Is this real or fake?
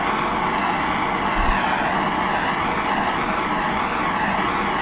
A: real